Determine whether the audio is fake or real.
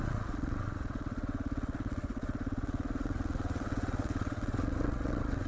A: fake